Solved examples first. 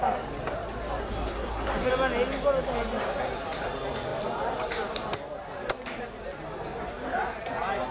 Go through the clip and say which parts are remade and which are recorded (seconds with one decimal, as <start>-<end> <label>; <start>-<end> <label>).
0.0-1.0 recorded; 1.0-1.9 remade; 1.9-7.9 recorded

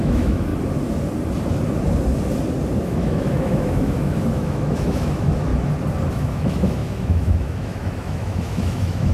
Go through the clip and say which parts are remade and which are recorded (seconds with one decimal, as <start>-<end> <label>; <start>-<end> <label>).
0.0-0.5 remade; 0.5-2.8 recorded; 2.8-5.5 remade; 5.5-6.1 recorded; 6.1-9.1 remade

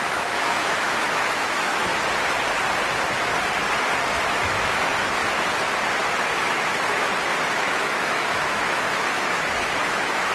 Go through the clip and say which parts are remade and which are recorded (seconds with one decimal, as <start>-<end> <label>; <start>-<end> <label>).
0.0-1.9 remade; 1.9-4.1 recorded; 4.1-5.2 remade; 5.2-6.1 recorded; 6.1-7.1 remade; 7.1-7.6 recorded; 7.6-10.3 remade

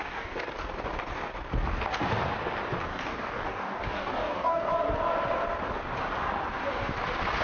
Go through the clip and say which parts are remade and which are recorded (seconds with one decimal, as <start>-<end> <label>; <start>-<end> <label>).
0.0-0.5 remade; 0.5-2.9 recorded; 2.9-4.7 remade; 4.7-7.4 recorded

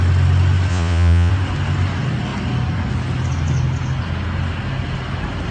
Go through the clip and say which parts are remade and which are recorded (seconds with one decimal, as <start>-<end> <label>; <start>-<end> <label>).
0.0-0.7 recorded; 0.7-1.3 remade; 1.3-5.5 recorded